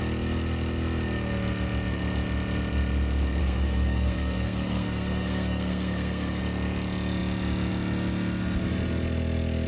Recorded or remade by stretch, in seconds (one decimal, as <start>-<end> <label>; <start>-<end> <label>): 0.0-3.4 recorded; 3.4-6.4 remade; 6.4-9.7 recorded